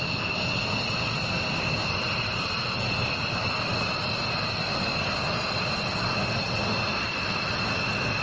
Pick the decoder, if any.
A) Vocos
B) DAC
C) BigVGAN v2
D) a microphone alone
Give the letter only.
D